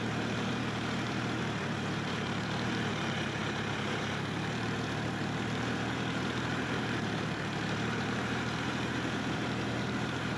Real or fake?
fake